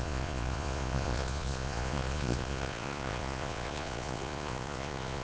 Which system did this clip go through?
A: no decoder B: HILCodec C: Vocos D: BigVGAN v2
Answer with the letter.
C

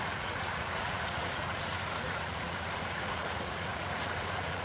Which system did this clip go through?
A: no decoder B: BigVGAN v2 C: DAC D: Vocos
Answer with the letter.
D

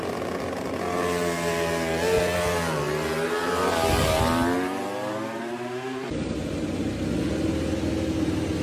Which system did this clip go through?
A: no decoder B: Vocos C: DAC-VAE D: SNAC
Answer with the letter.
A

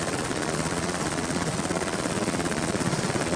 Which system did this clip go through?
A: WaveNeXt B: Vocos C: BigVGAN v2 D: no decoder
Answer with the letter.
B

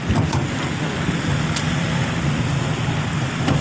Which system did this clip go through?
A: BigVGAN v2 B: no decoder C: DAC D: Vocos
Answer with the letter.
B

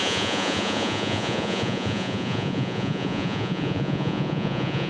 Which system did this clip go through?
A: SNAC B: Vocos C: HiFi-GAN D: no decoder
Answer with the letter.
B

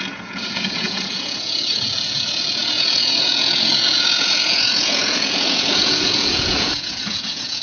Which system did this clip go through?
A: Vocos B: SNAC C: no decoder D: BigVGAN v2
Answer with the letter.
A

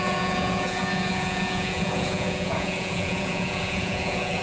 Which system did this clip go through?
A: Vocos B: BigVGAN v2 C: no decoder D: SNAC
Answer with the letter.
A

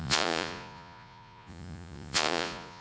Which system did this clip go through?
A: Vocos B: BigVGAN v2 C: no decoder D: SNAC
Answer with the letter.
A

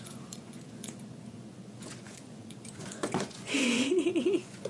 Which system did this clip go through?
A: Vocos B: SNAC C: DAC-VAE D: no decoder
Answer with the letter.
A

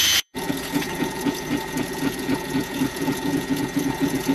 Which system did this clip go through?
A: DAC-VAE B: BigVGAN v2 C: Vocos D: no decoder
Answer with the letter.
C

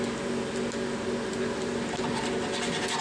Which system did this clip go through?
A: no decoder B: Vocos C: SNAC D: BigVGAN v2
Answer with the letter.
A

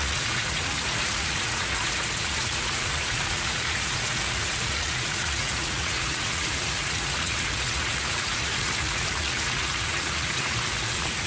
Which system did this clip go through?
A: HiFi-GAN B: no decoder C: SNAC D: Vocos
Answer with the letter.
D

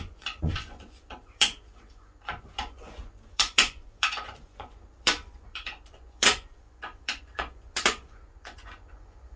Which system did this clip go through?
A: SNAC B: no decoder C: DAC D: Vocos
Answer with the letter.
D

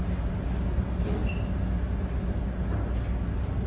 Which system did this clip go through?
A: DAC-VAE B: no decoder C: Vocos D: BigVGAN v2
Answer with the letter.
B